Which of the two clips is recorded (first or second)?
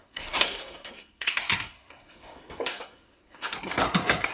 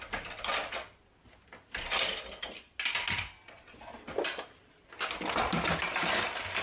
second